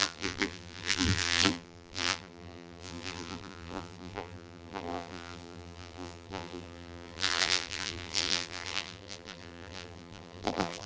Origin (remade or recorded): remade